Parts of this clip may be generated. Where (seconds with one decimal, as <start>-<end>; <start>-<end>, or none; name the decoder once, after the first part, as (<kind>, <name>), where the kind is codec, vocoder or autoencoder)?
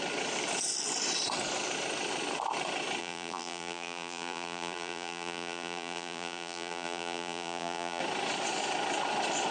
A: 3.0-8.0 (vocoder, BigVGAN v2)